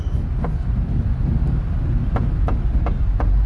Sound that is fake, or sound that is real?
real